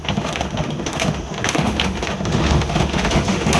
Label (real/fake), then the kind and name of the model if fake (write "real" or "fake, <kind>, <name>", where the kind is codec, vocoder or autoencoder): fake, autoencoder, DAC-VAE